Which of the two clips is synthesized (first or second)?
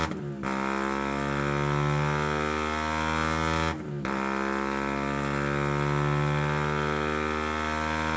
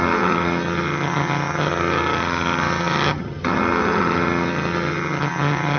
second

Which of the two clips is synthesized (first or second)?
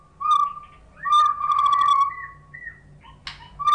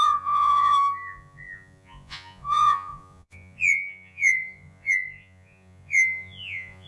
second